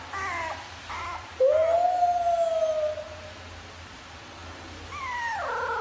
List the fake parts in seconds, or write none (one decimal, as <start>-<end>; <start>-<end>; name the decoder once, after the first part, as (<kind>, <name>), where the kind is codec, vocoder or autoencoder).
0.0-1.6 (vocoder, BigVGAN v2); 3.7-4.4; 5.0-5.8